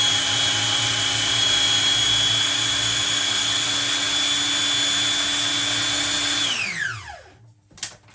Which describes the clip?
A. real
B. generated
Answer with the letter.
A